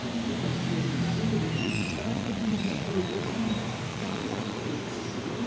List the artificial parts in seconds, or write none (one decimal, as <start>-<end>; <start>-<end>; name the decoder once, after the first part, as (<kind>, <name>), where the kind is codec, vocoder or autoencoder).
1.6-3.3 (vocoder, Vocos); 3.9-4.6